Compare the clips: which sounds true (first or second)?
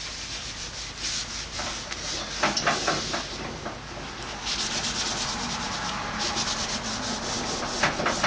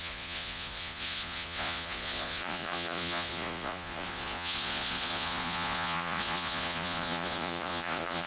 first